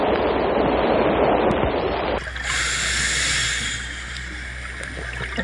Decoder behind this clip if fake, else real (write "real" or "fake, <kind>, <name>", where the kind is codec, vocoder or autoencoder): real